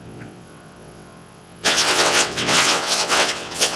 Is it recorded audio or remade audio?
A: remade